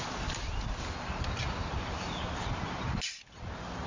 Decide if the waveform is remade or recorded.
recorded